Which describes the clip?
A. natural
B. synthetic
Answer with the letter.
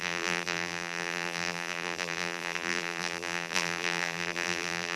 B